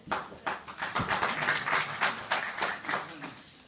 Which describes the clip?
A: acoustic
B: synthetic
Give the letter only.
A